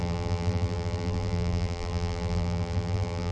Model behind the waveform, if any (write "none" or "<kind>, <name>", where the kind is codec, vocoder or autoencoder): vocoder, BigVGAN v2